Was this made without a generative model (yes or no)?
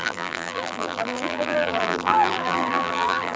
no